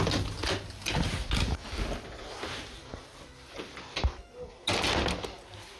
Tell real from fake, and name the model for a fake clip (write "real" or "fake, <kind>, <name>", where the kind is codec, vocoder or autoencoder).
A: real